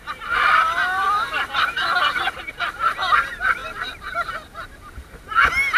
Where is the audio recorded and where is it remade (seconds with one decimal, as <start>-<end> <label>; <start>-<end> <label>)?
0.0-0.8 recorded; 0.8-2.0 remade; 2.0-5.8 recorded